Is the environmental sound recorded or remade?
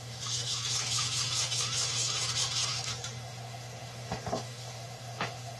remade